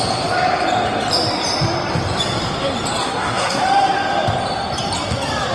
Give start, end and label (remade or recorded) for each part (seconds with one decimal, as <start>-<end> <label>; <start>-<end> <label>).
0.0-3.0 recorded; 3.0-3.6 remade; 3.6-5.5 recorded